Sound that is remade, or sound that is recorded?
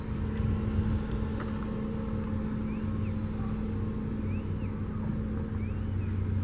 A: recorded